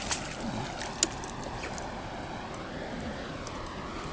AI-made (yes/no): no